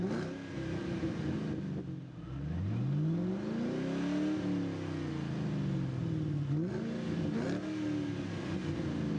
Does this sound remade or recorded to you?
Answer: recorded